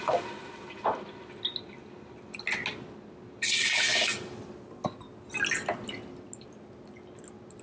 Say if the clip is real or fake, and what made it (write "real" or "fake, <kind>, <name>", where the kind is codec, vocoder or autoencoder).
real